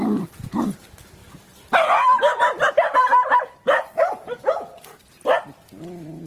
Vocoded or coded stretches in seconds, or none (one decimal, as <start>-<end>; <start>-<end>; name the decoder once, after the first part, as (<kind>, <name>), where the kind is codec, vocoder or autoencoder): none